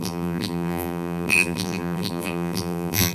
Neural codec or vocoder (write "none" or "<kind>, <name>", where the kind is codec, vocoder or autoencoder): vocoder, BigVGAN v2